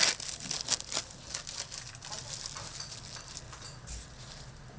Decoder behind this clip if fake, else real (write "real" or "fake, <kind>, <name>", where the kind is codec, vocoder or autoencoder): real